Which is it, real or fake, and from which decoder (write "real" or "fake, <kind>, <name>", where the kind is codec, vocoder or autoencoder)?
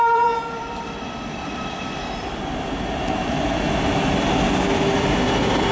fake, vocoder, BigVGAN v2